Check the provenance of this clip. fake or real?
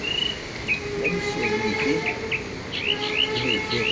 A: real